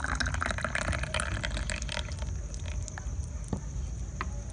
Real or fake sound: real